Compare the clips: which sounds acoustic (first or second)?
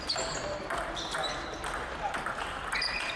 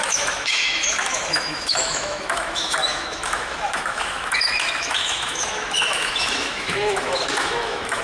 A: first